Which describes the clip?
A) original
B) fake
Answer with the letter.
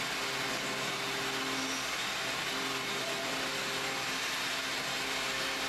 A